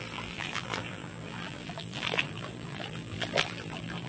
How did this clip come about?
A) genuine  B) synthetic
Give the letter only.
B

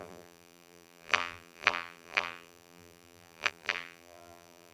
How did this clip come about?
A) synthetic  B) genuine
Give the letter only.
A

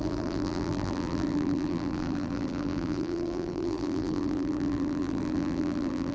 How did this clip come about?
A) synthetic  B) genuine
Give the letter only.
A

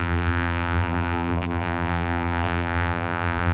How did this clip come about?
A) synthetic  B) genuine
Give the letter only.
A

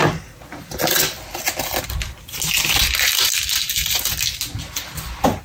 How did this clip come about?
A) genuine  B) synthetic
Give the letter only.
A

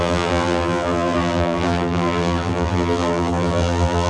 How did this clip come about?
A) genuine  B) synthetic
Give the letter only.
B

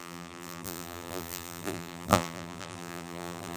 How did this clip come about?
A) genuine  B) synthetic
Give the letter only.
B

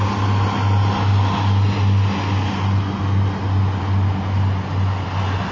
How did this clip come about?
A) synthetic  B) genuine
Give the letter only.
B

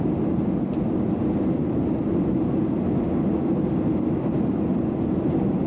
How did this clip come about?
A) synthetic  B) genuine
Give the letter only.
B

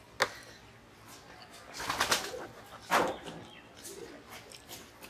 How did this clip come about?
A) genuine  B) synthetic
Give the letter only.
A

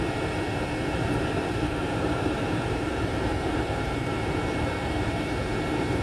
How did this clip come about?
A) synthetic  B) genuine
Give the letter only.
A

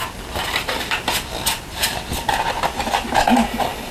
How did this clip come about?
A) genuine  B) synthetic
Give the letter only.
A